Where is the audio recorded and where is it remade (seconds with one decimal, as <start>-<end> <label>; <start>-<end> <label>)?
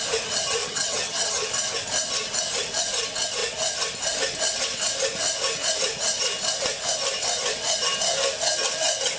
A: 0.0-0.6 recorded; 0.6-1.5 remade; 1.5-9.2 recorded